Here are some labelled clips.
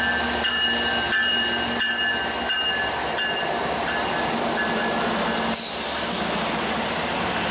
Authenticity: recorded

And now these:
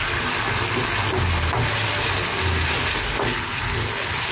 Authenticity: recorded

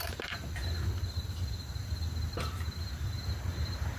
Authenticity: remade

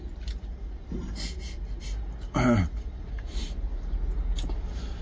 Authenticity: recorded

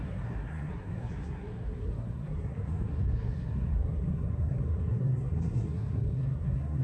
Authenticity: remade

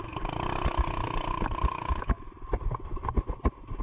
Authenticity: recorded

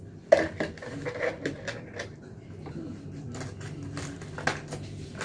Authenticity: recorded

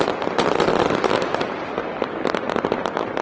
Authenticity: recorded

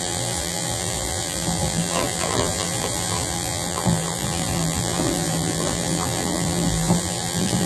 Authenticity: remade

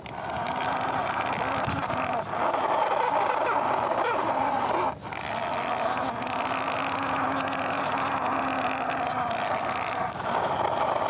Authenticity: recorded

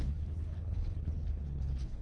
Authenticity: remade